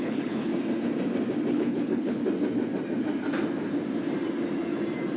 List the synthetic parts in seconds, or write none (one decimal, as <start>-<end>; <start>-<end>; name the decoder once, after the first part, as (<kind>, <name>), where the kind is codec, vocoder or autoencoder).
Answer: 0.0-0.5 (codec, HILCodec); 1.5-2.2